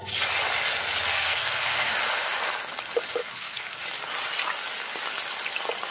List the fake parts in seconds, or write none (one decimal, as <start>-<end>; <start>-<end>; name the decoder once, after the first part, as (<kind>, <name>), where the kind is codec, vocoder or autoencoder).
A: 1.1-1.9 (codec, SNAC); 3.2-3.8

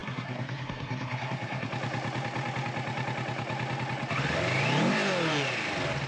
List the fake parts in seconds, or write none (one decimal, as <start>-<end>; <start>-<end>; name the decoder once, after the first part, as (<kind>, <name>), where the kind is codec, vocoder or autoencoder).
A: 0.0-1.7 (codec, SNAC)

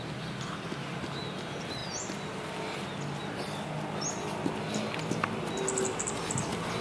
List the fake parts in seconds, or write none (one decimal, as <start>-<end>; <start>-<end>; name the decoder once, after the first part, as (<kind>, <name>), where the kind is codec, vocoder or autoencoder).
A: none